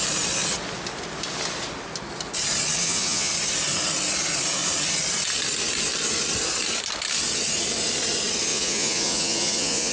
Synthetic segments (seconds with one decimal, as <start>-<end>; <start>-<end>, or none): 2.8-3.3; 8.5-9.9